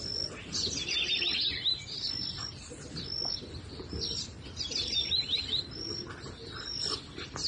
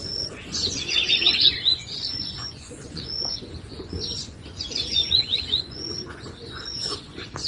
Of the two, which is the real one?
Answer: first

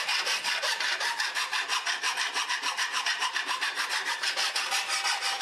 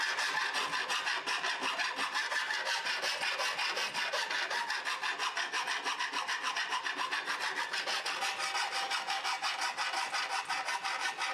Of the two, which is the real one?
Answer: second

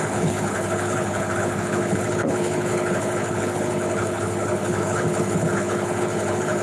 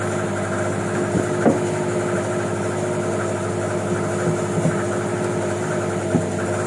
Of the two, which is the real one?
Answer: second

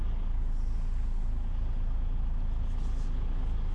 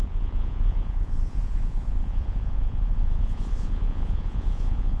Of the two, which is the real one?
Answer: first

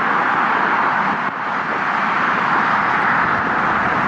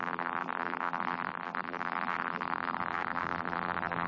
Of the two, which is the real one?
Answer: first